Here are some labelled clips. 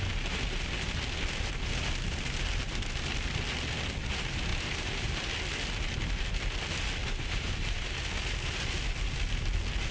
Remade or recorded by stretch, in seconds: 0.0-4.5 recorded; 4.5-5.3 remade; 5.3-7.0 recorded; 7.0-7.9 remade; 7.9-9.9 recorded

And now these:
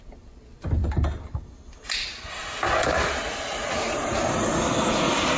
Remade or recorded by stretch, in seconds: 0.0-5.4 recorded

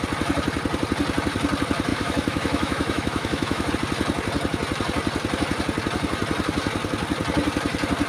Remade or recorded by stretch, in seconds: 0.0-1.9 recorded; 1.9-3.7 remade; 3.7-8.1 recorded

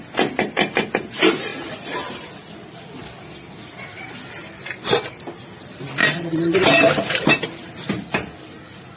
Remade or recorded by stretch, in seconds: 0.0-6.0 recorded; 6.0-7.7 remade; 7.7-9.0 recorded

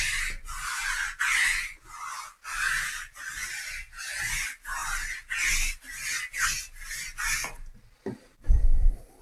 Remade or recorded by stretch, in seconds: 0.0-9.2 recorded